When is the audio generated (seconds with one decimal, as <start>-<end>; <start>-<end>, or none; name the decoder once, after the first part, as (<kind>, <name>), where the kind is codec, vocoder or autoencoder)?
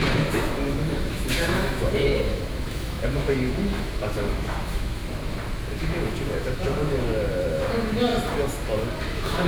0.0-5.0 (autoencoder, DAC-VAE); 5.8-8.1; 9.1-9.5